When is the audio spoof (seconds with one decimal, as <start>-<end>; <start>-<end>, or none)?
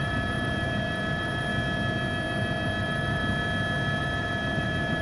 0.0-1.5; 2.8-3.2; 4.0-5.0